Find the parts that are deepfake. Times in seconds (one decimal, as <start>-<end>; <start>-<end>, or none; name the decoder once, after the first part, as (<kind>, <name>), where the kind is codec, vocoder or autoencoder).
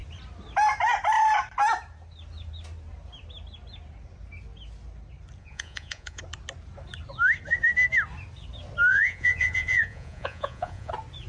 5.4-6.2 (vocoder, Vocos); 8.9-10.9